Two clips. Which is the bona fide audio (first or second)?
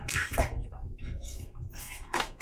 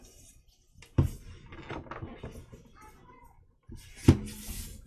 second